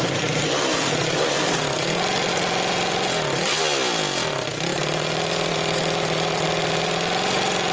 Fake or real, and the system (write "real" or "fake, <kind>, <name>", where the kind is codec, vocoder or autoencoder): real